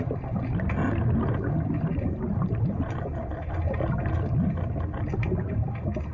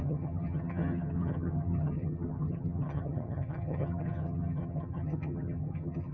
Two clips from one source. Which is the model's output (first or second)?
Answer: second